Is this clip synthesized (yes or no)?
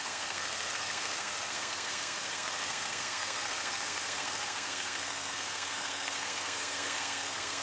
yes